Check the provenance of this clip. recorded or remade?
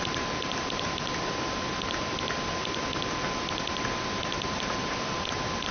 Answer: recorded